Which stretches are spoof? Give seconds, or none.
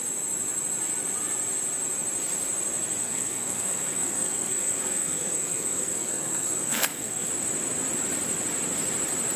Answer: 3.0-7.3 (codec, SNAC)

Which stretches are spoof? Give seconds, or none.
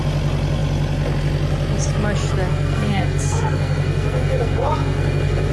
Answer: 2.5-5.5 (codec, SNAC)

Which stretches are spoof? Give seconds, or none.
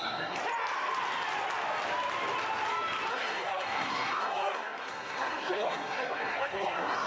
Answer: 0.0-0.4 (codec, SNAC); 3.1-7.1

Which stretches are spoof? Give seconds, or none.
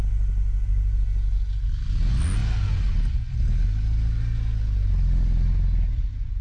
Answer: none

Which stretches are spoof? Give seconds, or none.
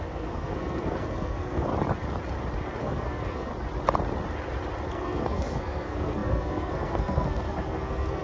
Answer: 0.0-1.7 (codec, SNAC); 2.8-3.5; 4.9-8.2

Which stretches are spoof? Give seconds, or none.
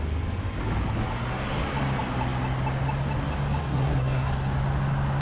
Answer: 3.6-4.3 (codec, SNAC)